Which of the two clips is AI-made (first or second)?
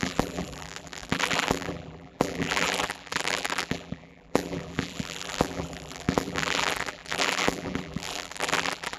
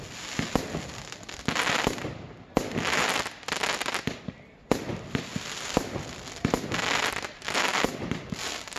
first